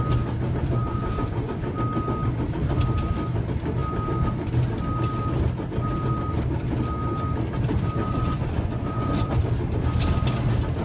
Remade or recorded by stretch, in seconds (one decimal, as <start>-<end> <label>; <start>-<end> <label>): 0.0-0.8 recorded; 0.8-1.7 remade; 1.7-8.0 recorded; 8.0-9.3 remade; 9.3-10.8 recorded

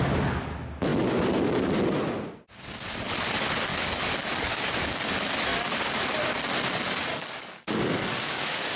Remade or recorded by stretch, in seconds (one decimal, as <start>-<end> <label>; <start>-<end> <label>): 0.0-3.7 recorded; 3.7-5.1 remade; 5.1-7.1 recorded; 7.1-8.8 remade

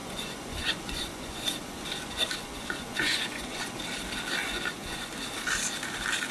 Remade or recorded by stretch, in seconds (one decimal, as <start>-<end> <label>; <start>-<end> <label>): 0.0-3.8 remade; 3.8-4.4 recorded; 4.4-5.1 remade; 5.1-6.3 recorded

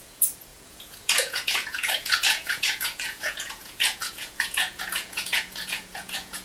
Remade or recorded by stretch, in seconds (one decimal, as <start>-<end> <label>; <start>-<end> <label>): 0.0-6.4 remade

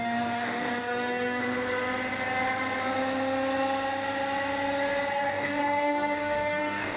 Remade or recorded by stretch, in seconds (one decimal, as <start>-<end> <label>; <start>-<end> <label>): 0.0-1.4 remade; 1.4-5.1 recorded; 5.1-7.0 remade

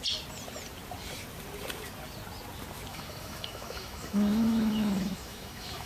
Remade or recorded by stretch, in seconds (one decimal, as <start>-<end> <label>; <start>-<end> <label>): 0.0-2.9 recorded; 2.9-5.9 remade